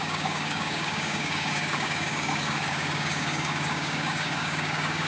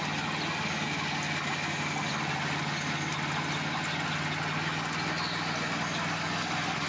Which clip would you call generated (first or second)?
first